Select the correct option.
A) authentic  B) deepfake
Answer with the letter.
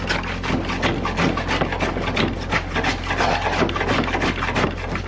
A